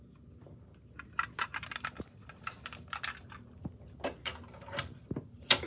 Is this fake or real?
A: real